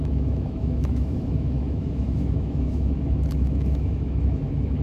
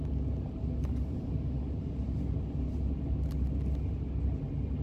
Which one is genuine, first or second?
second